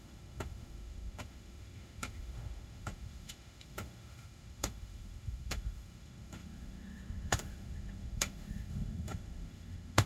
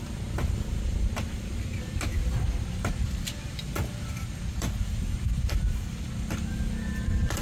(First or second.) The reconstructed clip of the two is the first